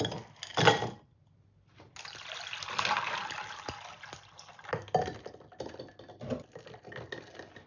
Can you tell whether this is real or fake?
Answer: real